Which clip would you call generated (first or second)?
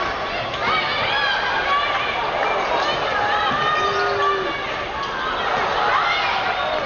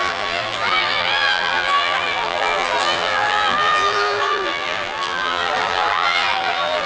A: second